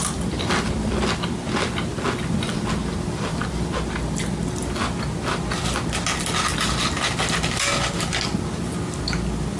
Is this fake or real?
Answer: real